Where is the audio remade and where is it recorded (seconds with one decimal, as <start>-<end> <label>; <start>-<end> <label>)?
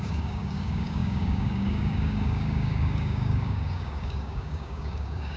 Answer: 0.0-5.4 remade